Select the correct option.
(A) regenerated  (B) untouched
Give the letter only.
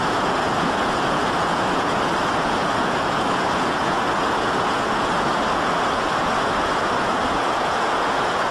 A